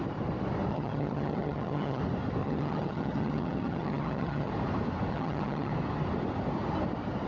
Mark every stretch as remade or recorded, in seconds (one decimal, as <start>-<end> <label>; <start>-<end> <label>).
0.0-0.7 recorded; 0.7-2.0 remade; 2.0-2.4 recorded; 2.4-4.5 remade; 4.5-5.1 recorded; 5.1-5.7 remade; 5.7-7.3 recorded